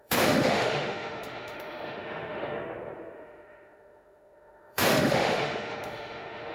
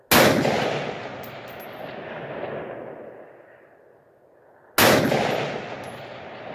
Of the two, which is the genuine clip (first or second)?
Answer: second